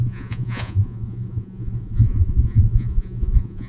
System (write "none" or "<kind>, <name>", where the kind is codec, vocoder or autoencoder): vocoder, Vocos